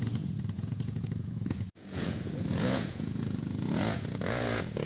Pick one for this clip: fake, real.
fake